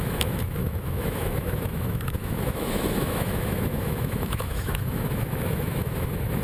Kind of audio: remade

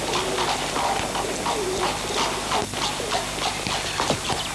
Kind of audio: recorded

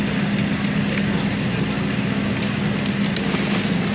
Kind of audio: recorded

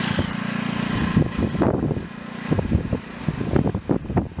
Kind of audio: recorded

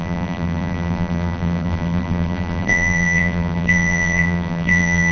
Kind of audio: remade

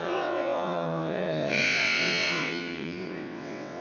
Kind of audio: remade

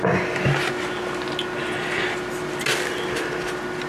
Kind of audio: recorded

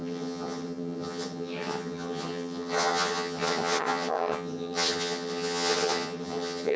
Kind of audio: remade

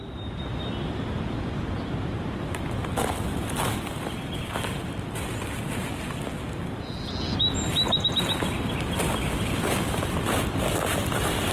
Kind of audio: recorded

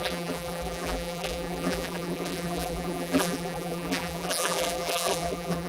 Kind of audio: remade